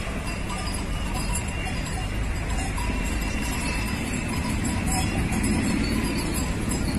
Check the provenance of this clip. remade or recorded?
remade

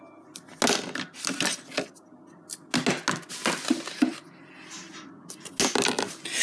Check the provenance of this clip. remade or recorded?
recorded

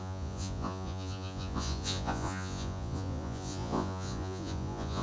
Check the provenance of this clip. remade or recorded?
remade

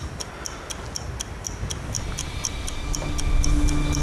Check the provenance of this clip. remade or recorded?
recorded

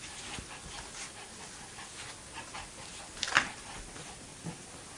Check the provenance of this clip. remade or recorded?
recorded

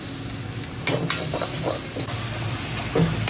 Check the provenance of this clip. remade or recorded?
recorded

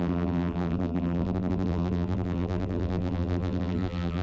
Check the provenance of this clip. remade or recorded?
remade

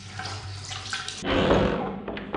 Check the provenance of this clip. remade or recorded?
remade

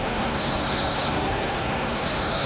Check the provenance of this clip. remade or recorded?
remade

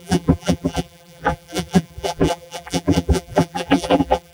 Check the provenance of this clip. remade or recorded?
remade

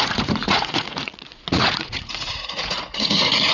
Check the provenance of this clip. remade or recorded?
remade